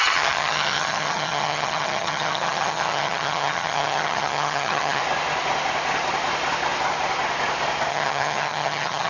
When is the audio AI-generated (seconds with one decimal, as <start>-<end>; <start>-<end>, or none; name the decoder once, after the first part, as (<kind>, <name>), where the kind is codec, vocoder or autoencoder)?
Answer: 0.0-5.0 (vocoder, HiFi-GAN); 7.9-9.1